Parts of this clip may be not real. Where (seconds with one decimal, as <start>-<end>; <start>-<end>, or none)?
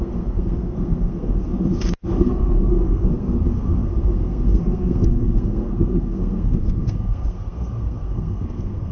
0.0-1.5; 2.2-8.9